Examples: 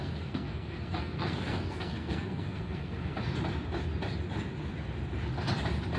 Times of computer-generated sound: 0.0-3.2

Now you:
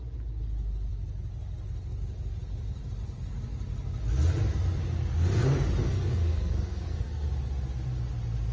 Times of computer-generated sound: 5.8-7.3

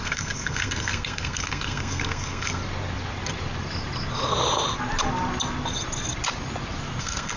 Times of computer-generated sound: 0.0-2.6; 7.0-7.4

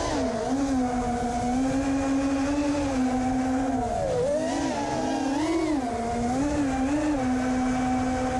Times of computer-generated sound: none

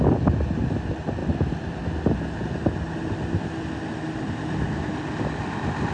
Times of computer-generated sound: none

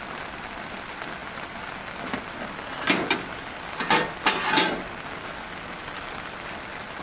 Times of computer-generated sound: none

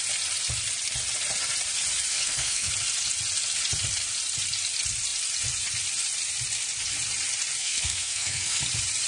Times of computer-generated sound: 2.1-2.7; 7.6-8.6

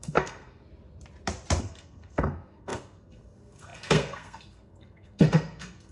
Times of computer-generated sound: 0.0-0.6; 1.6-5.9